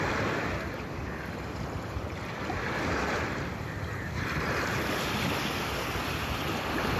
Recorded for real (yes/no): yes